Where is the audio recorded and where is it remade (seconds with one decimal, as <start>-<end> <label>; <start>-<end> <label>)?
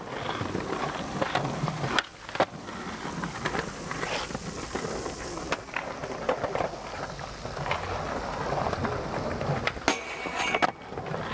0.0-11.3 recorded